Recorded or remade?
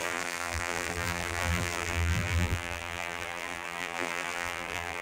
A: remade